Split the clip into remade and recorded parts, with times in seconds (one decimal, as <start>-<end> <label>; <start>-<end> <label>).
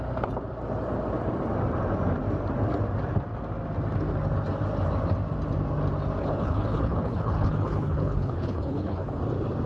0.0-6.2 recorded; 6.2-9.2 remade; 9.2-9.7 recorded